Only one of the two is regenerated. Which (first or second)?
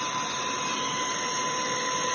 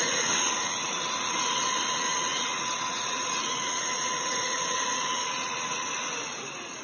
second